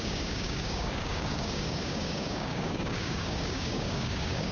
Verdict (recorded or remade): remade